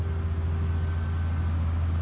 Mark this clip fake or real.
real